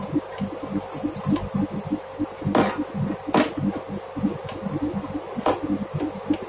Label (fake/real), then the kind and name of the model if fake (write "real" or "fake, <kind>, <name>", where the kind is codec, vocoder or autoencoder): real